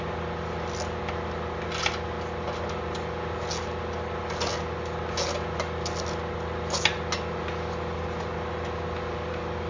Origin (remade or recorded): recorded